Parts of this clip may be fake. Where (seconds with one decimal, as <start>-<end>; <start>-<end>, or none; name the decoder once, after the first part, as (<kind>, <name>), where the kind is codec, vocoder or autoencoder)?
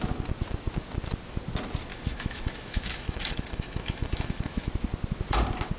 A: 1.9-4.7 (autoencoder, DAC-VAE)